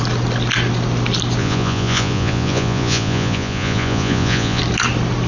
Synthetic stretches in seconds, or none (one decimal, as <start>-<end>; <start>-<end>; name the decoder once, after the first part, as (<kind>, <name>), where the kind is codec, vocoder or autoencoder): 1.4-4.6 (vocoder, Vocos)